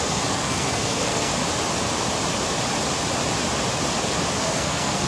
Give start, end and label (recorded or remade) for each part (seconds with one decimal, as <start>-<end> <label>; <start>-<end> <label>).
0.0-1.3 remade; 1.3-4.4 recorded; 4.4-5.1 remade